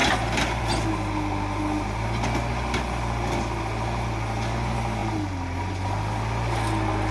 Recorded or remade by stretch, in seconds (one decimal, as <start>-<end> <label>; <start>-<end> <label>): 0.0-7.1 recorded